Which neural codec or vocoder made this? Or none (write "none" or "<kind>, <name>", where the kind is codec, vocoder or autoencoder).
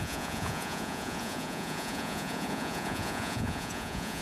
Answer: vocoder, Vocos